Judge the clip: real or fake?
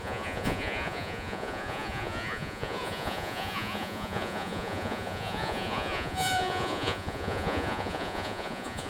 fake